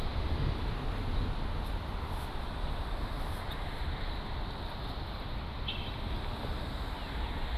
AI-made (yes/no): no